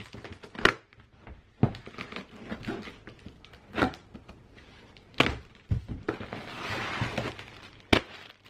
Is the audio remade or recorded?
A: recorded